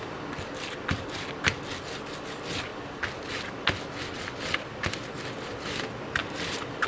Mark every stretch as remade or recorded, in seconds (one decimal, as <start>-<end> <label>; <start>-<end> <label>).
0.0-6.2 recorded; 6.2-6.9 remade